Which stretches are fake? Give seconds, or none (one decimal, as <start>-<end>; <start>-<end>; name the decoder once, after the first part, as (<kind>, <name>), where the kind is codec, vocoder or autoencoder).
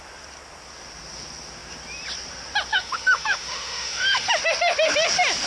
2.7-4.4 (autoencoder, DAC-VAE)